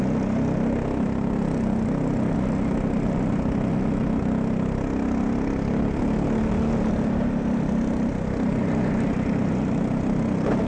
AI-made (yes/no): no